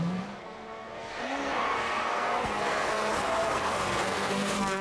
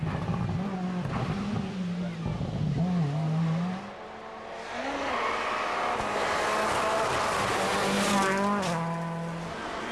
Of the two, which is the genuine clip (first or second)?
second